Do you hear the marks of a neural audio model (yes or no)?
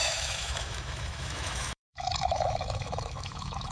yes